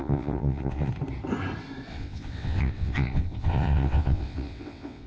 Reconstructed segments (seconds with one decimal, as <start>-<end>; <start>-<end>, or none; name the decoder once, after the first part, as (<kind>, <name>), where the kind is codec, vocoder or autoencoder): 0.0-0.9 (vocoder, WaveNeXt); 1.9-5.1